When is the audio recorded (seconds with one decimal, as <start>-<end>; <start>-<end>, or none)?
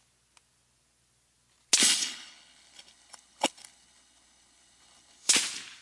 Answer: 0.0-1.8; 5.3-5.8